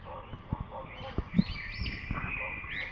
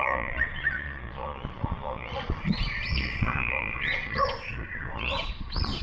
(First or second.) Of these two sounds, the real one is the first